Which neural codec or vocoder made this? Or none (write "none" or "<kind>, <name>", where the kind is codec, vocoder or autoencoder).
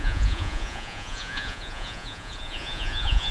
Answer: vocoder, Vocos